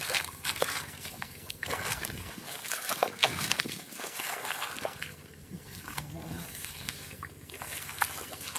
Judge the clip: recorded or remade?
remade